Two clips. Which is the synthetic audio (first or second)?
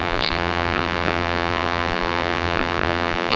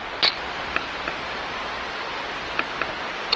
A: first